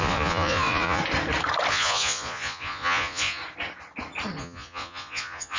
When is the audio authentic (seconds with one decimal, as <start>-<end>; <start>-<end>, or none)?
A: 1.0-1.7; 3.4-4.4